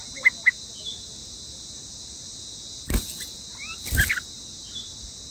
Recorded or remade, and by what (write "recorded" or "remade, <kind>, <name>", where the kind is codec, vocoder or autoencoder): recorded